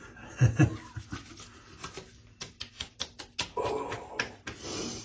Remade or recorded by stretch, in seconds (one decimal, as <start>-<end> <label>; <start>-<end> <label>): 0.0-5.0 recorded